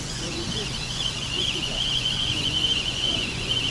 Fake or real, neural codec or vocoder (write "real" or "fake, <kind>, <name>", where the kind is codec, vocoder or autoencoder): fake, vocoder, Vocos